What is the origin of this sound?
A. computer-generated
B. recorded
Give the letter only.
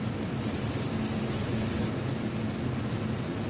B